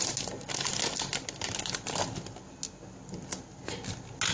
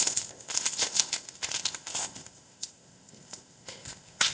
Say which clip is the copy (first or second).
second